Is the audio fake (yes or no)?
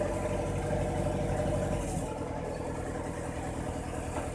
no